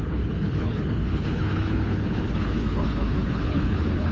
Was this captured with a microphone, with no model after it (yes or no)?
no